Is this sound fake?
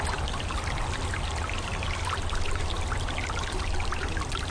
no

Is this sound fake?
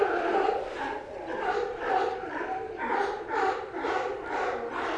yes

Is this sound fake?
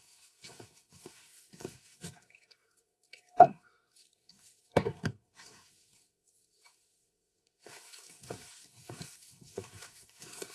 yes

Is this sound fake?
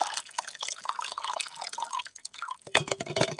yes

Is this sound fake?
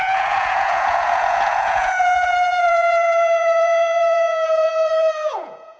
yes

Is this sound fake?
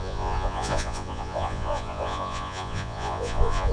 yes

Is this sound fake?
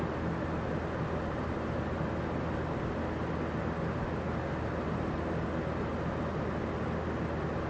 no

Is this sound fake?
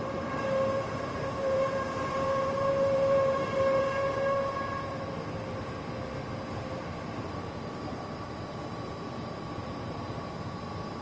yes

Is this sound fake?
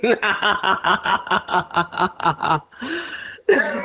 yes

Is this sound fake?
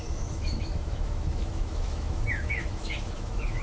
yes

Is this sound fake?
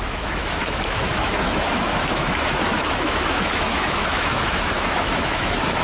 yes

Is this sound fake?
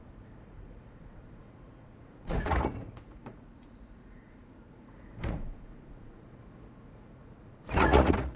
yes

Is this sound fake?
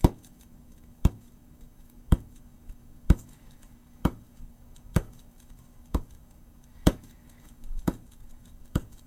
yes